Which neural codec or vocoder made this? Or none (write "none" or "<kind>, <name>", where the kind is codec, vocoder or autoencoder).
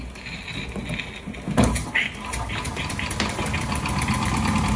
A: none